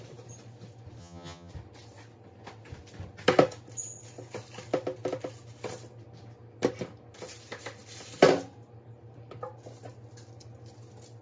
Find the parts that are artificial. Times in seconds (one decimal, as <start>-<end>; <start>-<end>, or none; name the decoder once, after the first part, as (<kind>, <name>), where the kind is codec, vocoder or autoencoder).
1.0-1.5 (vocoder, HiFi-GAN)